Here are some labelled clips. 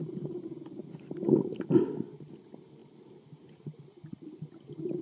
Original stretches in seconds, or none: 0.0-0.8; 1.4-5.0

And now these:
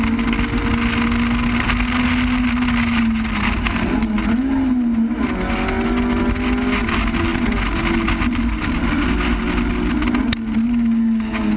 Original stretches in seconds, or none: 0.0-11.6

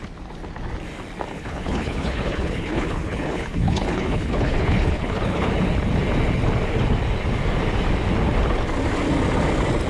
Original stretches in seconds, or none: 0.0-1.3; 5.5-9.9

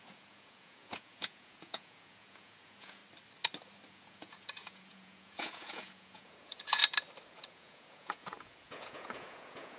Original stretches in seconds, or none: 3.0-3.9; 6.8-7.3

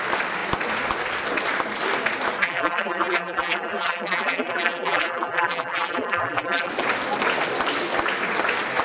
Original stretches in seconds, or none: 0.0-2.4; 6.7-8.8